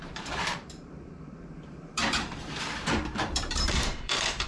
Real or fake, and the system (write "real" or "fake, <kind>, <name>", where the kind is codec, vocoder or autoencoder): fake, vocoder, BigVGAN v2